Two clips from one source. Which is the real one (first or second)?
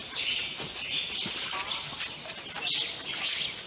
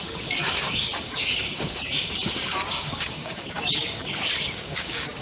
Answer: first